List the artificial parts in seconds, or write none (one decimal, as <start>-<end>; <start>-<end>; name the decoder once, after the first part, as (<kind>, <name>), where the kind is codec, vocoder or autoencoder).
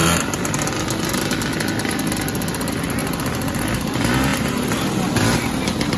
none